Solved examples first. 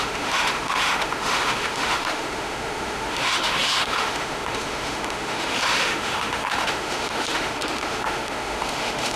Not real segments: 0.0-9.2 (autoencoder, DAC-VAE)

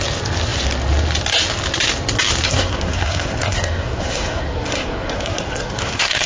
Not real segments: 2.4-6.3 (codec, SNAC)